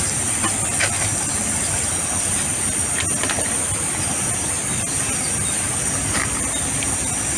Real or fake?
real